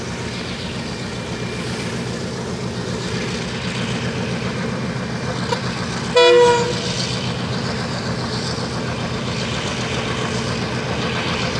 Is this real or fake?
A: real